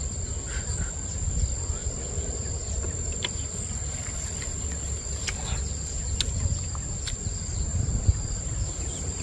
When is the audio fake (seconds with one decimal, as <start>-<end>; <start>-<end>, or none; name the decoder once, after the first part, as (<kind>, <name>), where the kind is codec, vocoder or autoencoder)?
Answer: 7.7-8.5 (vocoder, BigVGAN v2)